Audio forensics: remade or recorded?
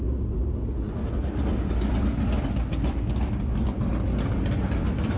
recorded